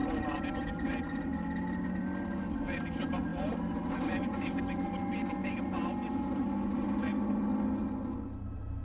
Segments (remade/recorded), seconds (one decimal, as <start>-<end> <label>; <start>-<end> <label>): 0.0-8.8 recorded